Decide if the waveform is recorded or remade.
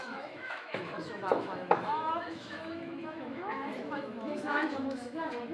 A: remade